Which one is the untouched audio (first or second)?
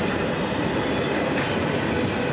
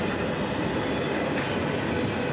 second